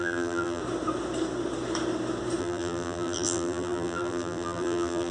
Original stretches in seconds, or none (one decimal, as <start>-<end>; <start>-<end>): 0.6-2.4